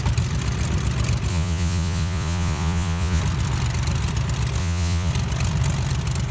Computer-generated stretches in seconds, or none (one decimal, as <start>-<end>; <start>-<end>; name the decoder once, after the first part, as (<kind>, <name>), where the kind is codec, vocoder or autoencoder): 1.3-3.2 (vocoder, Vocos); 4.6-5.1